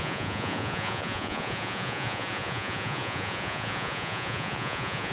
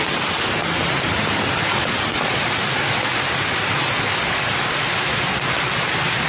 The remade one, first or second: first